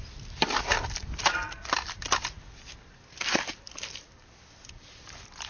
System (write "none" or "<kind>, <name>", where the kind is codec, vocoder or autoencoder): none